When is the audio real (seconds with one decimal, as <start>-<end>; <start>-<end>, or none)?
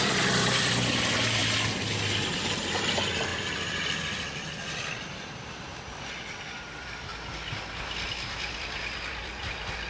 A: 1.4-2.3; 7.1-8.1